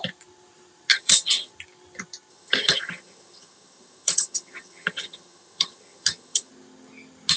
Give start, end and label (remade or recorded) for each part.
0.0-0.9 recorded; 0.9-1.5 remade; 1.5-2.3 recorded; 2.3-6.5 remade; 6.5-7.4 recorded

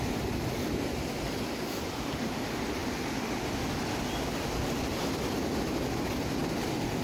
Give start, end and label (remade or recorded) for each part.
0.0-7.0 recorded

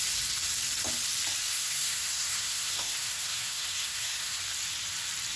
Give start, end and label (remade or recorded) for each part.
0.0-1.5 recorded; 1.5-4.4 remade; 4.4-5.4 recorded